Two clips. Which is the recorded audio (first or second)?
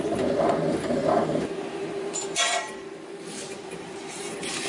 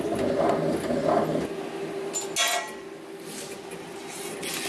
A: second